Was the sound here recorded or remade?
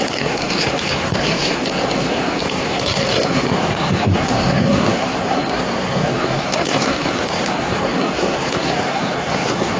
remade